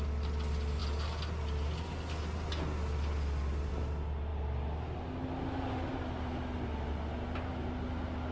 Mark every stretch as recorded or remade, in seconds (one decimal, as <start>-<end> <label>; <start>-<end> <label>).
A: 0.0-8.3 recorded